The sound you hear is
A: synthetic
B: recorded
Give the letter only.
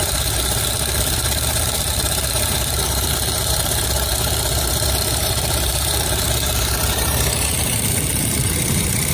A